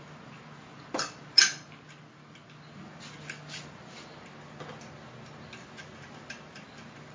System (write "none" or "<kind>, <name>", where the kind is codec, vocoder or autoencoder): none